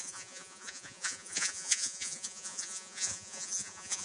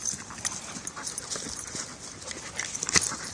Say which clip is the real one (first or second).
second